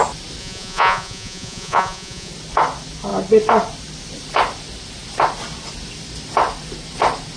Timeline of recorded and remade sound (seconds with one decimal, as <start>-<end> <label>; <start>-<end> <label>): 0.0-0.4 recorded; 0.4-2.3 remade; 2.3-7.4 recorded